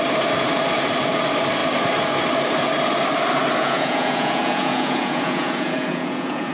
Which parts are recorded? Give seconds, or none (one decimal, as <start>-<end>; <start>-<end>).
0.0-3.6